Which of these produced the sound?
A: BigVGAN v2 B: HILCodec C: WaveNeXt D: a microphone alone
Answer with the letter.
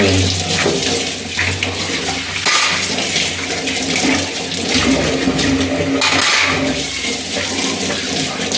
D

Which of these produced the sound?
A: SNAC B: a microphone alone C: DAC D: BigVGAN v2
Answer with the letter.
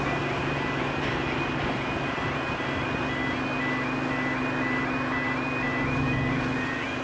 B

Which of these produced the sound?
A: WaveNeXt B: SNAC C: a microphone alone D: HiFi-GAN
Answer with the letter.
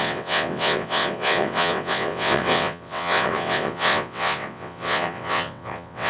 A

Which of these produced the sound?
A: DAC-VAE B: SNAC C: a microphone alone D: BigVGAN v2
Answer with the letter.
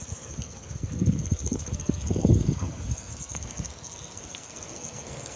B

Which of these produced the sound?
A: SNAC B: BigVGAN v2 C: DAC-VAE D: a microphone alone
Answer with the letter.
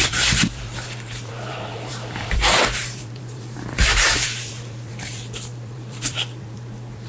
B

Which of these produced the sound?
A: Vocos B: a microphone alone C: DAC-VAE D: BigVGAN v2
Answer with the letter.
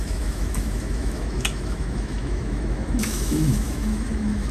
C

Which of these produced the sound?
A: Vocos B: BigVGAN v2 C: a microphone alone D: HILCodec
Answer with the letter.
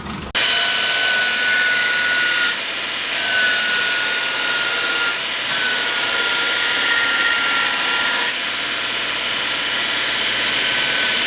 C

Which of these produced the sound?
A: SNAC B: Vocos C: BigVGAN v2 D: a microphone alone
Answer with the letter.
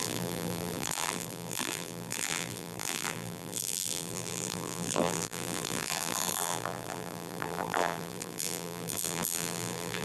C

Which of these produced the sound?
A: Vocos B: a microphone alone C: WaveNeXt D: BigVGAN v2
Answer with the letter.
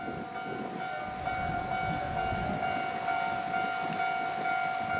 B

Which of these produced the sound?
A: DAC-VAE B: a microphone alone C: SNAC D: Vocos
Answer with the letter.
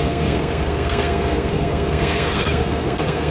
C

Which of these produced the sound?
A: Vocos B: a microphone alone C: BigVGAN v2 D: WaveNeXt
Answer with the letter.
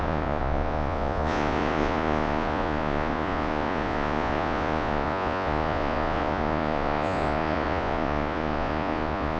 A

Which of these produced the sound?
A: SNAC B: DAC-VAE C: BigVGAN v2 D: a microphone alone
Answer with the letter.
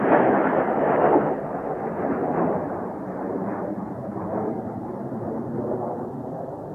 C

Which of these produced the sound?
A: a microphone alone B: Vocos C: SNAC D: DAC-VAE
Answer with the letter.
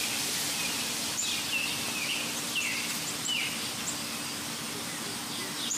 A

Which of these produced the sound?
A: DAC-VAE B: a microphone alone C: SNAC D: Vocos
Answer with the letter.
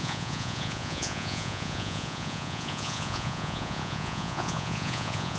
D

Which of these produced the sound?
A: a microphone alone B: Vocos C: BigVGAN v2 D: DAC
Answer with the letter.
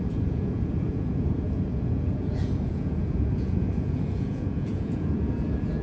B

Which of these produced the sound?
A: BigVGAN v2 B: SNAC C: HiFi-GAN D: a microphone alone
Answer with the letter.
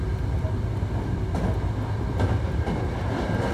D